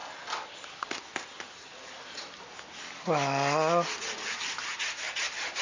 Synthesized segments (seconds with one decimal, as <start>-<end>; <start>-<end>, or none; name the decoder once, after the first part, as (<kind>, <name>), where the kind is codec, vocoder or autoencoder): none